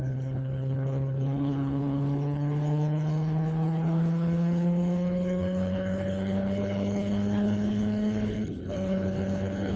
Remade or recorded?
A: remade